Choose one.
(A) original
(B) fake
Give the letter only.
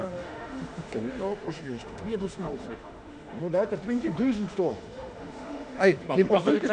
B